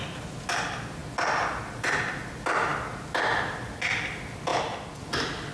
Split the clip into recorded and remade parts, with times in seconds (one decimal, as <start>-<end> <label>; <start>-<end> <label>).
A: 0.0-5.5 recorded